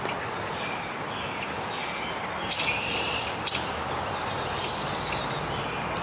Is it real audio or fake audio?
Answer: real